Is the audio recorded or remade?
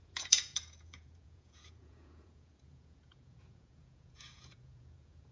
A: remade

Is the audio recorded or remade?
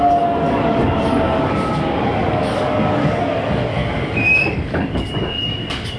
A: remade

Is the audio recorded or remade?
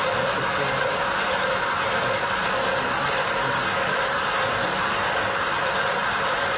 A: recorded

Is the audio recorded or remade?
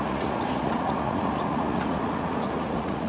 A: remade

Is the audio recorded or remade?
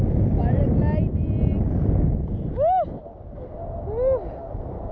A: recorded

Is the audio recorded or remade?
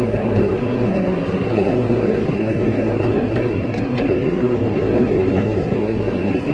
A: remade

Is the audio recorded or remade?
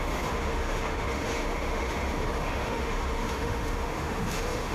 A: remade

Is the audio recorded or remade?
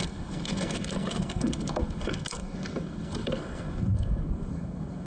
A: remade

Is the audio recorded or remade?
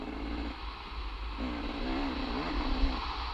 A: recorded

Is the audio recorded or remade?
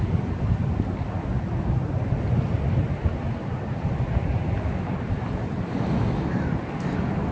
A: recorded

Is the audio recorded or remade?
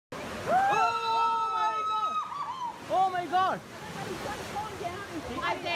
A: recorded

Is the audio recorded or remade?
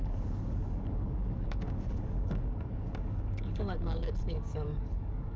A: remade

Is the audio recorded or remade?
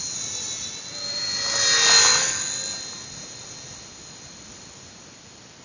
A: recorded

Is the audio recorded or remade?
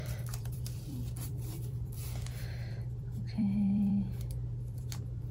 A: remade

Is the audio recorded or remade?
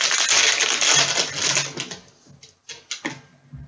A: recorded